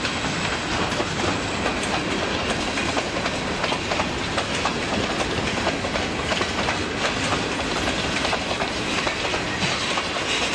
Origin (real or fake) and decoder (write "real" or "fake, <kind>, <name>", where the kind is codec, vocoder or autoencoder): real